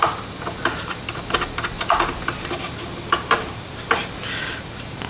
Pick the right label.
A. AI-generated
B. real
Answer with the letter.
B